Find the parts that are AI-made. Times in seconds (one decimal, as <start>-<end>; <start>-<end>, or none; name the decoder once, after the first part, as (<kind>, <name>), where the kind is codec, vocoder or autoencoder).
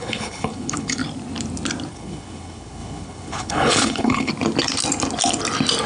0.0-1.0 (codec, HILCodec); 1.9-4.3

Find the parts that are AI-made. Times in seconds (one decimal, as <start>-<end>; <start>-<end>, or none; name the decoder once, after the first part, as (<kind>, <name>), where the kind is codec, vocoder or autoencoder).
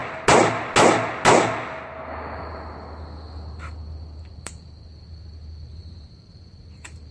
4.3-7.1 (vocoder, BigVGAN v2)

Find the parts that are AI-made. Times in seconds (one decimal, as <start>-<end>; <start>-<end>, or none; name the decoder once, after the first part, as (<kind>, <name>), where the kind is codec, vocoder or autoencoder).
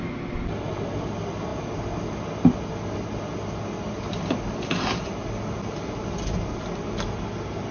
none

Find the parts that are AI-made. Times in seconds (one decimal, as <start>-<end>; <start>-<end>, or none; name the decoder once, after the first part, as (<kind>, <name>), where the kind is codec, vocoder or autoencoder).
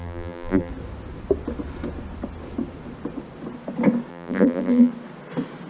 0.0-0.7 (vocoder, BigVGAN v2); 4.1-4.9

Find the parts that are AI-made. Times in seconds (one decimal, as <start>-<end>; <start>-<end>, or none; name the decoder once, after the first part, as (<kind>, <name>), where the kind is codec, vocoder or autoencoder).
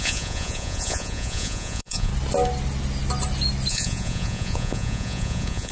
0.0-2.1 (vocoder, Vocos); 3.7-5.7